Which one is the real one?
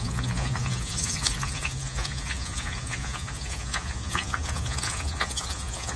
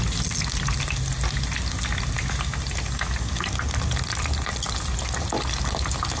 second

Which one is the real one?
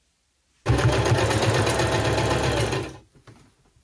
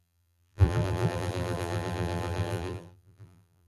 first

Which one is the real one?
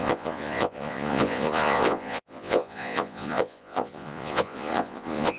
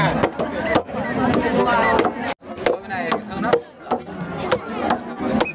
second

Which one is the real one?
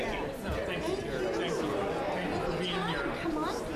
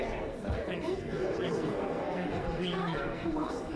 first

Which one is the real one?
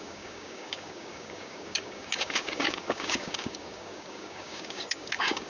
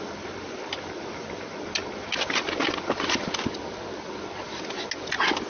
second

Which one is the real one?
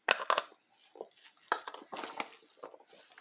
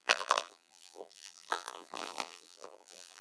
first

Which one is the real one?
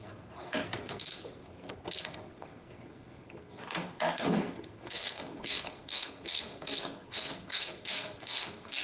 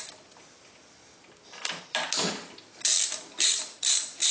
second